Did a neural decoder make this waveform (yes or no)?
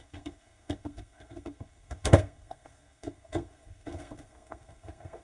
yes